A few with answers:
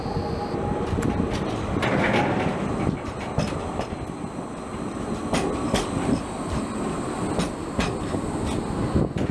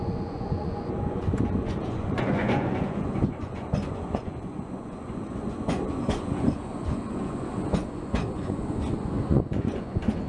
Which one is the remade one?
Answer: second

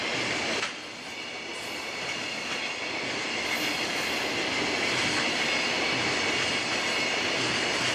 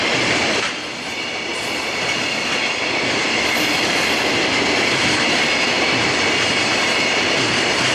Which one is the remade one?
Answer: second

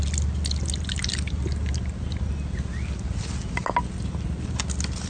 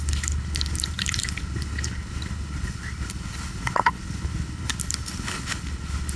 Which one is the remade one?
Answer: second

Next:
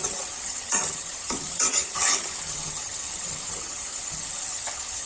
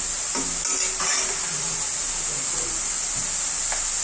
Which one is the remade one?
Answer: first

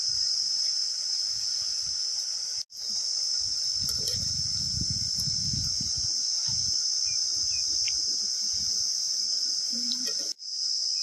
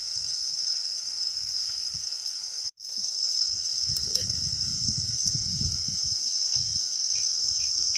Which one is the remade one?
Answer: second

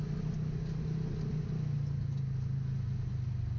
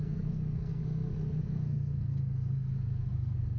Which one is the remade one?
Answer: second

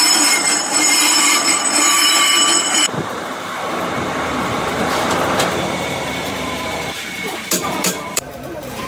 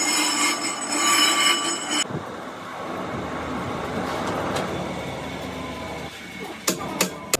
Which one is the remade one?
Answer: first